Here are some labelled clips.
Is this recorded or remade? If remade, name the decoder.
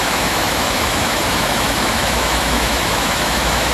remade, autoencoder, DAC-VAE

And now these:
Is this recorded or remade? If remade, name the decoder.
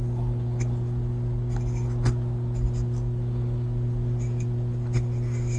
recorded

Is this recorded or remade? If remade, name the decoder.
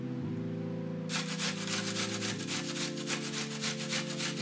recorded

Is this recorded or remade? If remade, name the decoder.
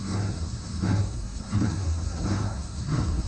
remade, codec, SNAC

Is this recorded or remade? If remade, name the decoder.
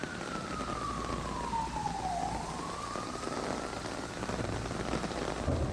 recorded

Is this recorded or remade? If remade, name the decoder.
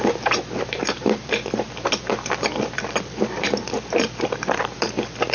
remade, vocoder, BigVGAN v2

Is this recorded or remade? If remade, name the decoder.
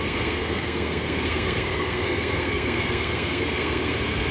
remade, codec, SNAC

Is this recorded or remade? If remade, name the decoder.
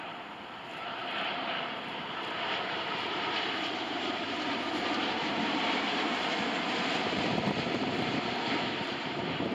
remade, vocoder, BigVGAN v2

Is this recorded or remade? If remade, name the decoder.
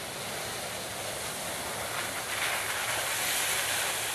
recorded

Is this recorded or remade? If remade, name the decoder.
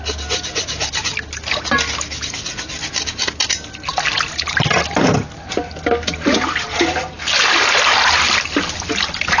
recorded